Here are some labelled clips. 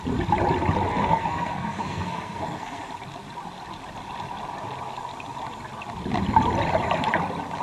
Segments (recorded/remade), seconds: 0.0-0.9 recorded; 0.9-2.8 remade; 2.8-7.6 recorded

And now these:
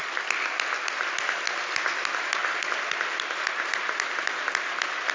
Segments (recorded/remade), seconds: 0.0-5.1 recorded

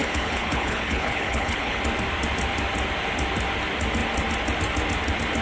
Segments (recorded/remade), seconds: 0.0-1.8 remade; 1.8-5.4 recorded

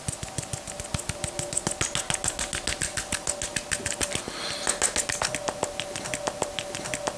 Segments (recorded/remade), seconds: 0.0-7.2 recorded

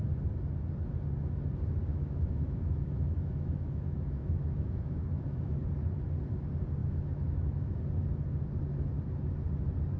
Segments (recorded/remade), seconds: 0.0-1.9 recorded; 1.9-5.5 remade; 5.5-6.8 recorded; 6.8-7.8 remade; 7.8-10.0 recorded

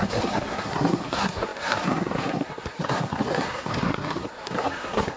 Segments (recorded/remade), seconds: 0.0-5.2 remade